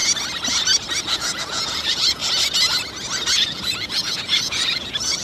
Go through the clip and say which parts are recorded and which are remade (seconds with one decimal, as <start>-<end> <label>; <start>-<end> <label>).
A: 0.0-1.0 recorded; 1.0-2.2 remade; 2.2-3.3 recorded; 3.3-5.2 remade